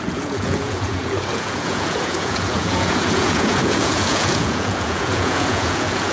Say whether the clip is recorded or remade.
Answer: remade